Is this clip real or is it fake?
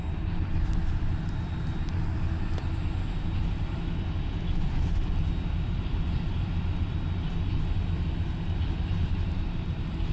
real